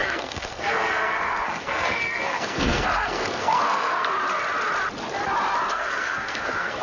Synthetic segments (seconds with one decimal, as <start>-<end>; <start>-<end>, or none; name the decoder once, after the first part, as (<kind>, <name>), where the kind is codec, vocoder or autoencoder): 0.0-4.1 (codec, SNAC); 5.7-6.8